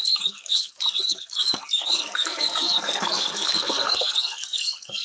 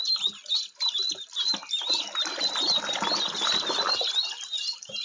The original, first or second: second